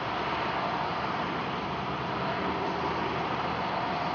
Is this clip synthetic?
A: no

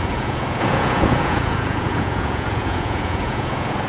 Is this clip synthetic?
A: yes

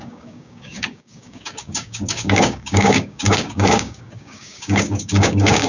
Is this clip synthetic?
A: yes